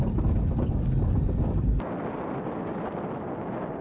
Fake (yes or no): no